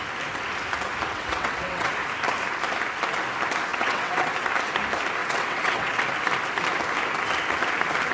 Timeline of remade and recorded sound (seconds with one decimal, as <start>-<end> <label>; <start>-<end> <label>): 0.0-1.1 recorded; 1.1-1.9 remade; 1.9-3.7 recorded; 3.7-4.3 remade; 4.3-5.2 recorded; 5.2-6.0 remade; 6.0-8.1 recorded